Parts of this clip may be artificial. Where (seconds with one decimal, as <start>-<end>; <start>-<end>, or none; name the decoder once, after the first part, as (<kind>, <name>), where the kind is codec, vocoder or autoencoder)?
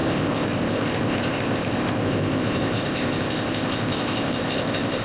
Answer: 0.0-5.0 (codec, ZipCodec)